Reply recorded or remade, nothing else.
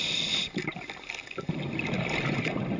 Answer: recorded